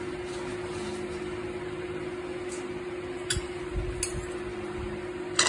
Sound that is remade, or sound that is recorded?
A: recorded